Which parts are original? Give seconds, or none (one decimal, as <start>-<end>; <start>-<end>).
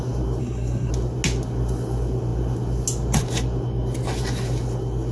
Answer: 0.0-0.4; 0.9-5.1